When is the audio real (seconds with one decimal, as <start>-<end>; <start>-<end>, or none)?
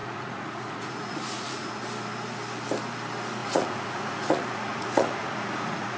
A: 1.8-3.4